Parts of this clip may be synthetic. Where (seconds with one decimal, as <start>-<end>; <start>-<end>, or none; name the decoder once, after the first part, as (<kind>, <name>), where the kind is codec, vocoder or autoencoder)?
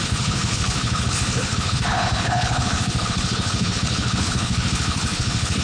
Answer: 0.0-5.6 (codec, HILCodec)